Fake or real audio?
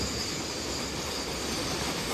real